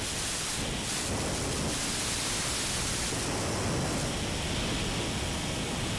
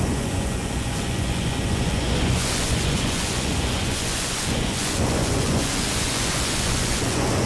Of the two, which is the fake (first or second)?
second